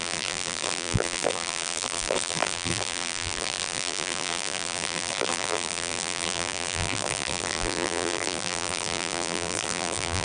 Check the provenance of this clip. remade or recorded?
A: remade